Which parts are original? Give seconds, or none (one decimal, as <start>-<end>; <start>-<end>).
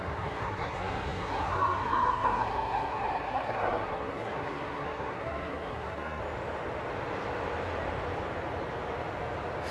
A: 6.2-9.7